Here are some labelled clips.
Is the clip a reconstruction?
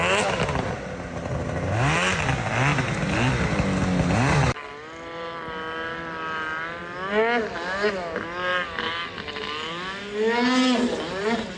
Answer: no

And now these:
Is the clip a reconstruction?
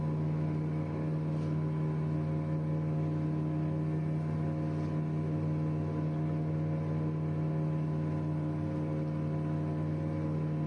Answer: no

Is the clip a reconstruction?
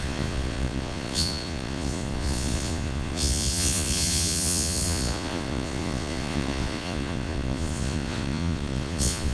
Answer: yes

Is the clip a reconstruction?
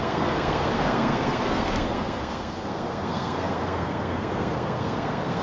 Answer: yes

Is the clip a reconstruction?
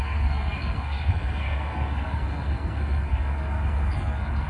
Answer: yes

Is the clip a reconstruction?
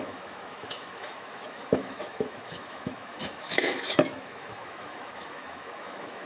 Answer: yes